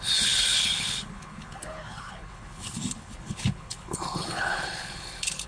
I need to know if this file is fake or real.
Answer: fake